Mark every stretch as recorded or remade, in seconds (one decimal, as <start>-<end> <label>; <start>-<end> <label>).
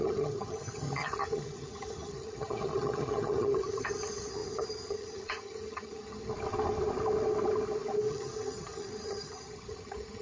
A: 0.0-6.3 remade; 6.3-8.1 recorded; 8.1-10.2 remade